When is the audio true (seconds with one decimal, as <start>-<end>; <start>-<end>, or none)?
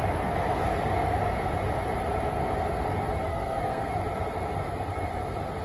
0.0-3.3; 3.9-5.6